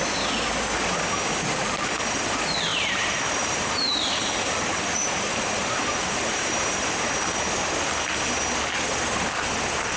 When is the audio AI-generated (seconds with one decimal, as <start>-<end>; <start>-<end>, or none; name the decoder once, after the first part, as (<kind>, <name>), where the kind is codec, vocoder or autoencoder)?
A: 2.7-6.9 (vocoder, BigVGAN v2)